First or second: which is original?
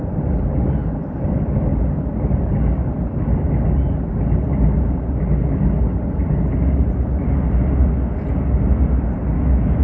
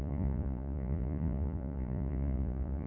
first